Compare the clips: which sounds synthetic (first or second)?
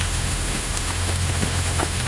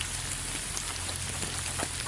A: first